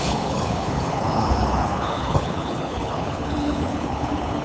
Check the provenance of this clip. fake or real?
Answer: fake